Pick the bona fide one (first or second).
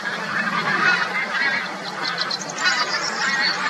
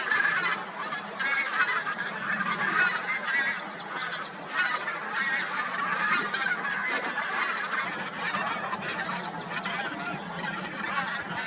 second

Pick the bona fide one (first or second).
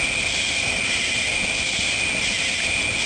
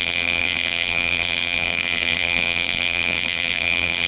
first